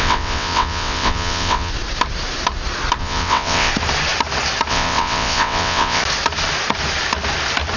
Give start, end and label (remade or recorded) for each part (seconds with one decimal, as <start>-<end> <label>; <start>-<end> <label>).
0.0-1.7 remade; 1.7-3.0 recorded; 3.0-3.7 remade; 3.7-4.7 recorded; 4.7-6.0 remade; 6.0-7.8 recorded